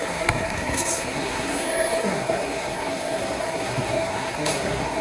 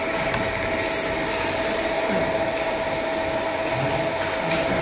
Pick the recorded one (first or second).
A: second